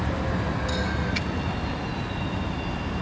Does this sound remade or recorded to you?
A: recorded